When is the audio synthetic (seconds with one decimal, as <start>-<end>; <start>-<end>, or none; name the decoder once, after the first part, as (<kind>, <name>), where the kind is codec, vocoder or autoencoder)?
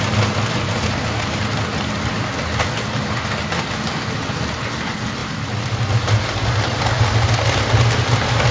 5.2-5.8 (vocoder, BigVGAN v2)